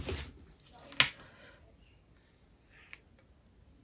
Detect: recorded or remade recorded